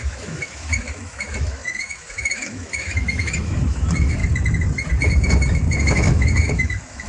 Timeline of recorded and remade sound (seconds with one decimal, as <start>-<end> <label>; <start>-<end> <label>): 0.0-4.2 remade; 4.2-5.0 recorded; 5.0-7.1 remade